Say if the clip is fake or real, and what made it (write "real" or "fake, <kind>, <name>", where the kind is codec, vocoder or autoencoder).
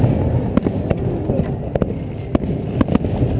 real